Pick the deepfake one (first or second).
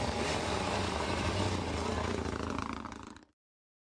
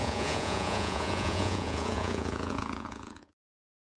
second